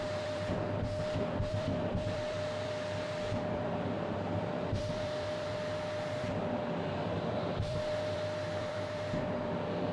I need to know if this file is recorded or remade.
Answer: remade